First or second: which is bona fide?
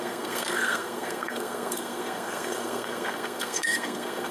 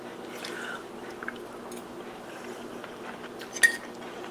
second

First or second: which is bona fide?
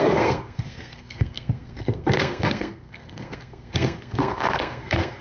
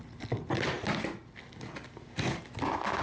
second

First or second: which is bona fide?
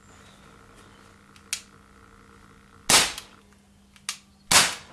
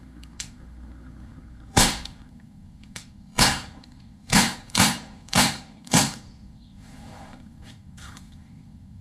first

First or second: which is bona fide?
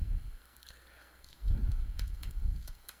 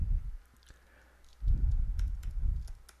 second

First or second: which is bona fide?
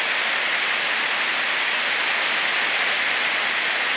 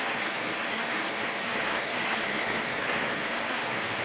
first